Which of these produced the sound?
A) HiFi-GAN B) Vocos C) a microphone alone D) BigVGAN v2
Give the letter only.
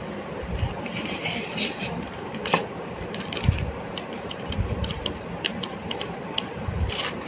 D